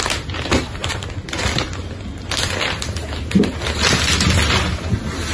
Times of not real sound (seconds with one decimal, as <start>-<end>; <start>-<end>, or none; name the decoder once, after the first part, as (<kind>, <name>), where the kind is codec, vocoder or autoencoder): none